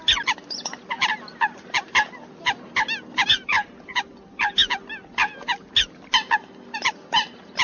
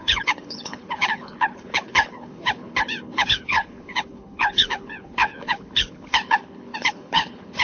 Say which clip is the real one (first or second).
first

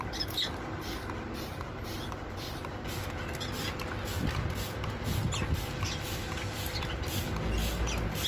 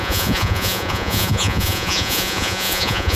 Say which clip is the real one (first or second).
first